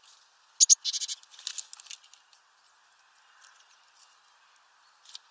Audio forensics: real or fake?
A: real